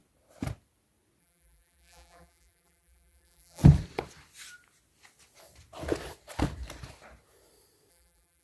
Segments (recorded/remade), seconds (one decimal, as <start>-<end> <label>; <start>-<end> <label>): 0.0-1.2 recorded; 1.2-3.6 remade; 3.6-7.9 recorded; 7.9-8.4 remade